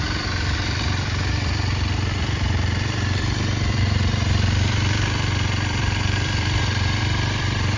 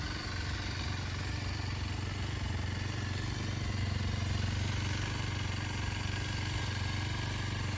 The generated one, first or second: first